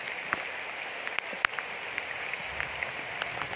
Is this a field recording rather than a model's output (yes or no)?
yes